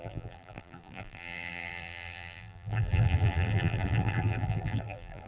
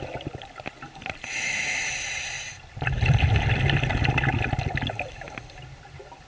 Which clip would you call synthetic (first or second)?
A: first